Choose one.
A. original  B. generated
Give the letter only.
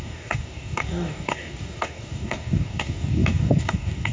B